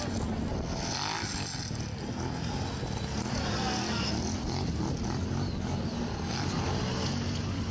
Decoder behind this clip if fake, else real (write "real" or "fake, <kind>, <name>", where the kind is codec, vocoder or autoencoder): real